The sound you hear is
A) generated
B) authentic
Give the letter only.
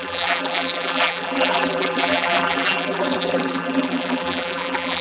A